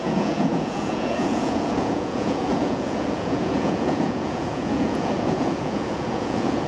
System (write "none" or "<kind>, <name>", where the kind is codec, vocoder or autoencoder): vocoder, Vocos